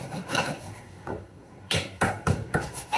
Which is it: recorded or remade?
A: remade